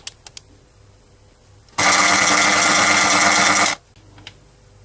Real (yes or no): yes